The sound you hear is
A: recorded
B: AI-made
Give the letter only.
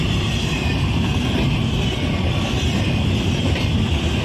A